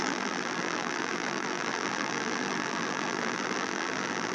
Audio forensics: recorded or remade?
remade